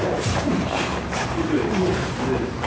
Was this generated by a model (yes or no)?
yes